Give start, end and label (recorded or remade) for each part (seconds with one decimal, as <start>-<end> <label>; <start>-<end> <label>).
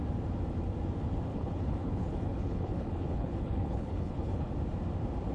0.0-1.3 recorded; 1.3-4.5 remade; 4.5-5.3 recorded